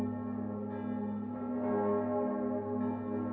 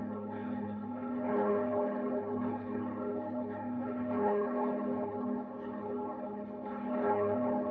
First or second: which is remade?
second